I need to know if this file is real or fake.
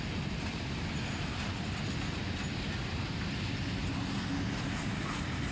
real